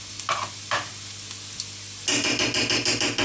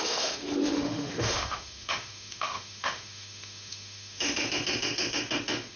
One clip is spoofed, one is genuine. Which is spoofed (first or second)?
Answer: second